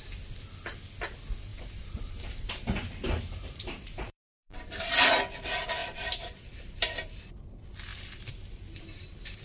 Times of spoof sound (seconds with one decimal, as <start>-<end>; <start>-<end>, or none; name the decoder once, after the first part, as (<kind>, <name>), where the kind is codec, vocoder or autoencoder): 1.5-4.9 (vocoder, BigVGAN v2); 5.8-7.2; 7.9-9.4